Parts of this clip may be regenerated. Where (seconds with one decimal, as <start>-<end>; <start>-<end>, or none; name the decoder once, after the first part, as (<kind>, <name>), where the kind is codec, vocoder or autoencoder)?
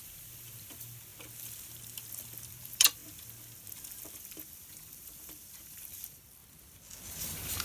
0.0-1.1 (vocoder, BigVGAN v2); 2.5-3.0; 4.2-6.4; 7.1-7.6